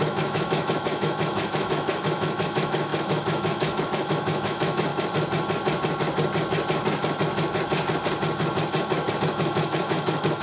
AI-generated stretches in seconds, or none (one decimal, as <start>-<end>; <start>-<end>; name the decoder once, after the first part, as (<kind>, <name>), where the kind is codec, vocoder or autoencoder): 0.0-4.9 (autoencoder, DAC-VAE); 9.2-10.4